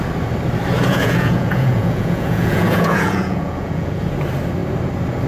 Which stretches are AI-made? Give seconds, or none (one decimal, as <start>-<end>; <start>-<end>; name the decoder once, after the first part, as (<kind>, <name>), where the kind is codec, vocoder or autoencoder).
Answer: 0.9-4.1 (vocoder, Vocos)